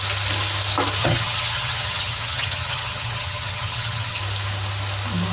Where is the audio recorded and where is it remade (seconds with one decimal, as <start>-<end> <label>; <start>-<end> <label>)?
0.0-1.0 recorded; 1.0-4.2 remade; 4.2-5.3 recorded